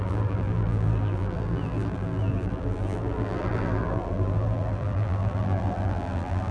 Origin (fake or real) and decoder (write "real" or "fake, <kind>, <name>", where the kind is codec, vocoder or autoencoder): fake, vocoder, BigVGAN v2